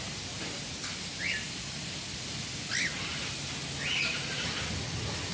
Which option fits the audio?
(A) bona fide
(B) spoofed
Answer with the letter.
A